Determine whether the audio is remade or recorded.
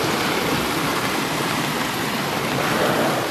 recorded